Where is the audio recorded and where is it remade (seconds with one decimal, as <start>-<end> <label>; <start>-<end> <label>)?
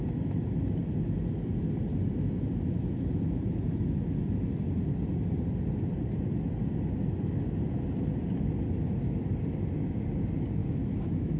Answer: 0.0-10.6 recorded; 10.6-11.4 remade